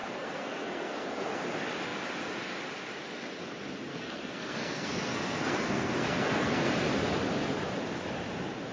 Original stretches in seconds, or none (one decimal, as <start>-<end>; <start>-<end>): 1.4-3.9; 6.7-8.7